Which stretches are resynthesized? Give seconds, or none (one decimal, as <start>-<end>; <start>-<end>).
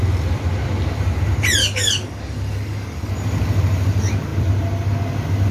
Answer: 1.6-3.1